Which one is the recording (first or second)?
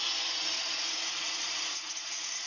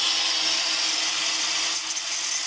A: second